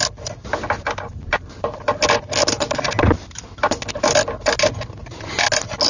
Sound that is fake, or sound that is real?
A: real